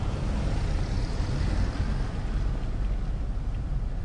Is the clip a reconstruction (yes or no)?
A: yes